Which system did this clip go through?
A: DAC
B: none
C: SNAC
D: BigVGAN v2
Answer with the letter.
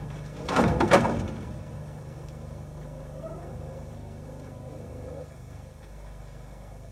C